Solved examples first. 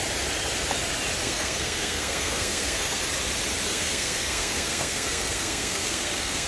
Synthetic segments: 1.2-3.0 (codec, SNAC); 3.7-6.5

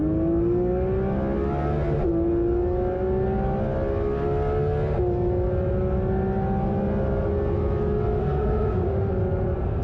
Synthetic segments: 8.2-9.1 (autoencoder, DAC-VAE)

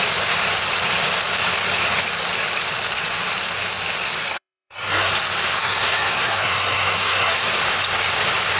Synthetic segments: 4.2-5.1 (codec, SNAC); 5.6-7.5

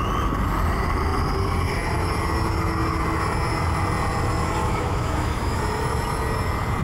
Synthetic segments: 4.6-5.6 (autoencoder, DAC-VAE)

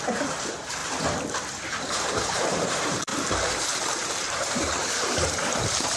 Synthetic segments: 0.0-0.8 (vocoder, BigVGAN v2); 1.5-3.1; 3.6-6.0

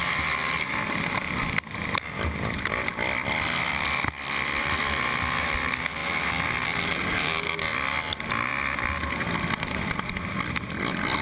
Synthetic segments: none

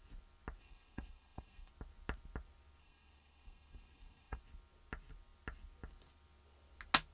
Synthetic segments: 0.6-1.7 (codec, SNAC); 2.8-4.4